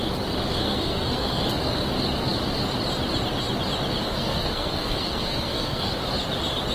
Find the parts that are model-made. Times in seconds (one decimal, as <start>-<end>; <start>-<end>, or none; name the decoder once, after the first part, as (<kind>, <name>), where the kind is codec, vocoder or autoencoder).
0.6-1.4 (codec, SNAC); 4.1-5.9